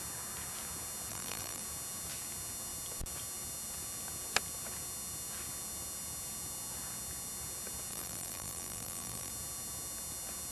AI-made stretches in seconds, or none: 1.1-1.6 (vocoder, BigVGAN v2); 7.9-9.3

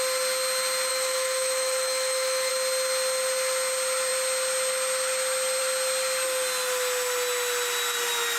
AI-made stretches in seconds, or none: 0.9-2.5 (autoencoder, DAC-VAE)

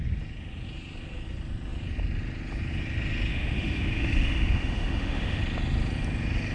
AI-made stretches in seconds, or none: 3.3-5.4 (autoencoder, DAC-VAE)